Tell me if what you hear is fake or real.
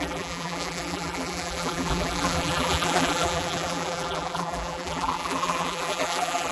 fake